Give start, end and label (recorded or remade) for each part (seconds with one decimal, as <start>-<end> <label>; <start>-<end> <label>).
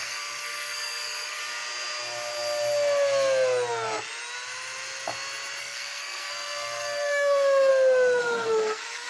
0.0-1.4 remade; 1.4-5.6 recorded; 5.6-7.7 remade; 7.7-8.2 recorded; 8.2-9.1 remade